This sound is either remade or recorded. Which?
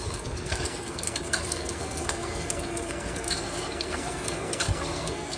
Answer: remade